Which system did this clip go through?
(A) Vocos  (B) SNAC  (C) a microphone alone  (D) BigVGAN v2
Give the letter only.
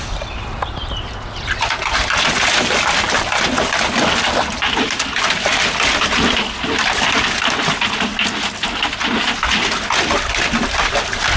C